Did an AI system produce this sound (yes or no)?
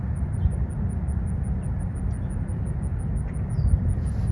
no